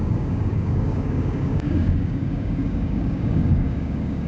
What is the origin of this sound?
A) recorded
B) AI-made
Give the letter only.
B